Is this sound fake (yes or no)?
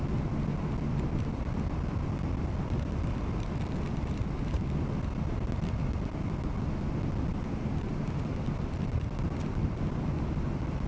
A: no